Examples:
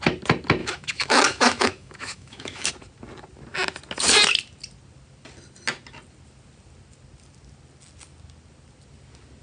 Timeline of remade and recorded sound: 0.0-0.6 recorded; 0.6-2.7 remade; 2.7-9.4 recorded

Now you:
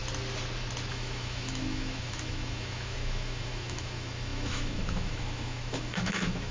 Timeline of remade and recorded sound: 0.0-0.9 recorded; 0.9-6.5 remade

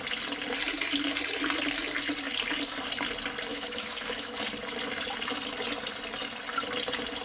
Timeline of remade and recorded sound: 0.0-3.5 recorded; 3.5-4.4 remade; 4.4-7.2 recorded

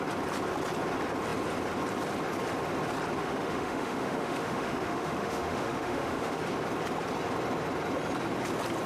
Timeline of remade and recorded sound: 0.0-3.2 recorded; 3.2-6.4 remade; 6.4-8.9 recorded

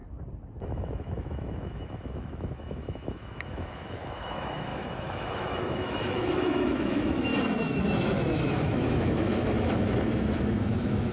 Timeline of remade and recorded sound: 0.0-0.6 recorded; 0.6-7.3 remade; 7.3-7.8 recorded; 7.8-11.1 remade

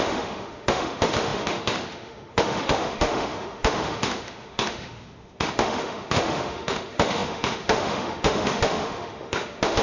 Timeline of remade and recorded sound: 0.0-9.8 remade

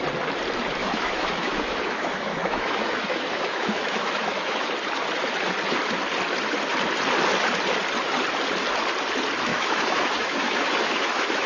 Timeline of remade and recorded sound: 0.0-0.8 recorded; 0.8-4.7 remade; 4.7-9.5 recorded; 9.5-11.5 remade